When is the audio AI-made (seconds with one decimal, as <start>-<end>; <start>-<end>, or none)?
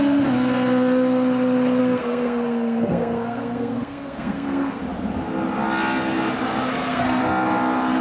1.8-4.8; 6.7-7.2